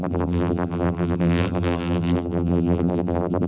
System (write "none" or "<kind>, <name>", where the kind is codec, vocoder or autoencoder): vocoder, BigVGAN v2